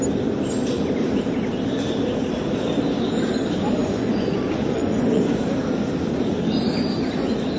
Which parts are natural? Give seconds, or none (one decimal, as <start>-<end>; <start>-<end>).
0.0-3.8; 5.2-7.6